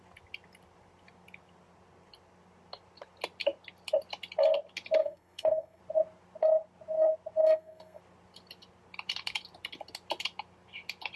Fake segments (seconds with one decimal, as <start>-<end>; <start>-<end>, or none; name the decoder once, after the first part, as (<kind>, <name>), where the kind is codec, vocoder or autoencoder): 5.0-5.8 (codec, SNAC); 7.4-8.0